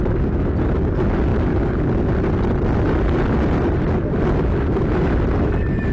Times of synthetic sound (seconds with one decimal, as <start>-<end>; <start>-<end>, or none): none